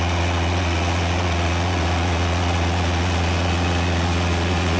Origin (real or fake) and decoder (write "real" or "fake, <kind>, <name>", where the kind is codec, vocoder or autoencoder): fake, vocoder, Vocos